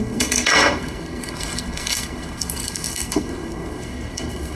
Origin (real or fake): fake